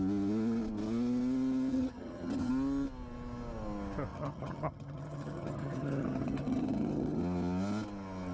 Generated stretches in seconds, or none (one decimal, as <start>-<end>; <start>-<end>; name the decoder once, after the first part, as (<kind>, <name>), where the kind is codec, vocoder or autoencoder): 1.7-2.5 (vocoder, HiFi-GAN); 4.1-7.2